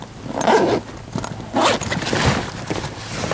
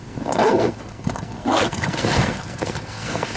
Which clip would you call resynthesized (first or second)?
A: second